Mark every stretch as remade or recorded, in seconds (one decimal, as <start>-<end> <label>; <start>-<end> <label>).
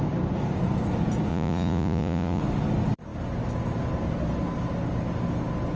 0.0-1.3 recorded; 1.3-2.4 remade; 2.4-5.8 recorded